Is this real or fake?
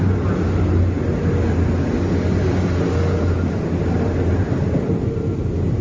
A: real